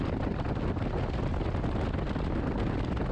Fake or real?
real